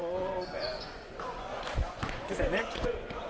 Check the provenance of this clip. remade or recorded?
remade